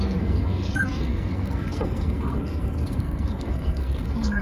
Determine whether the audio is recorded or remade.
remade